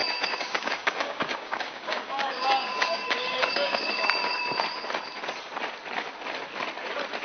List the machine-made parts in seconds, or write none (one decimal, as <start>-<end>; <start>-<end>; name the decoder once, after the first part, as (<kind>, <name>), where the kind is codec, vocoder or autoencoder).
0.0-4.3 (codec, DAC)